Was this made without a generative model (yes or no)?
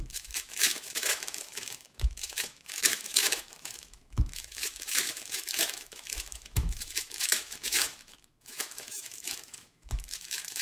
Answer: no